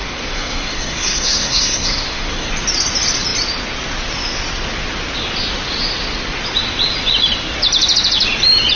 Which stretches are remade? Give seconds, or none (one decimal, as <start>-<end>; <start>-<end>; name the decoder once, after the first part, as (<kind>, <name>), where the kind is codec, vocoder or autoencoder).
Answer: 0.0-2.5 (codec, SNAC)